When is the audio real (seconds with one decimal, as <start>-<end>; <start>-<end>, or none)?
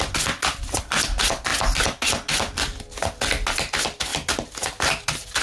0.0-5.4